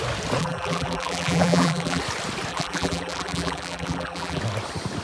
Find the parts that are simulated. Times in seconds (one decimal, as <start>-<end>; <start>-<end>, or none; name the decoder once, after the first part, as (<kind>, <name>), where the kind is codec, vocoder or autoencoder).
0.4-2.0 (vocoder, BigVGAN v2); 2.5-4.4